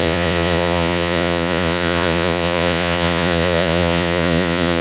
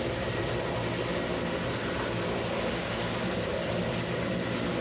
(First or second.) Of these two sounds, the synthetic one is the first